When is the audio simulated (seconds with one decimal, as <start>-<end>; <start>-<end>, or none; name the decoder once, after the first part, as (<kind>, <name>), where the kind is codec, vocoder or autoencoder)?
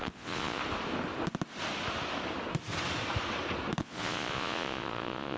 0.0-0.6 (vocoder, Vocos); 3.8-5.4